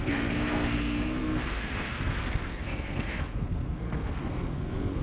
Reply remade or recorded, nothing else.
remade